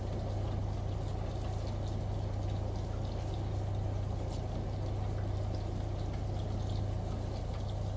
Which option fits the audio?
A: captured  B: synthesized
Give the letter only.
A